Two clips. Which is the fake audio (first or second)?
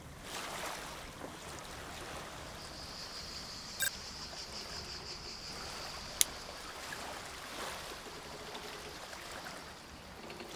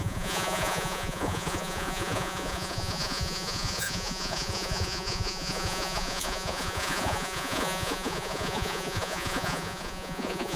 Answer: second